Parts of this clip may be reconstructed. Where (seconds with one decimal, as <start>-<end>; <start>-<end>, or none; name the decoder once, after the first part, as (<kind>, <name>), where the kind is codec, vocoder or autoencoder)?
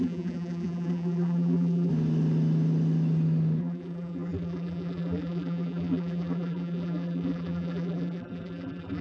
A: 0.0-1.9 (vocoder, BigVGAN v2); 3.6-9.0